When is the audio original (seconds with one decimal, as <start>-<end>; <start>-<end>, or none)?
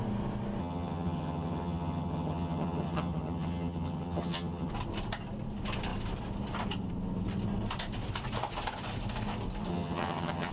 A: 0.0-0.6; 4.7-9.7